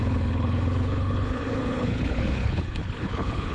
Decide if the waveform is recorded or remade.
remade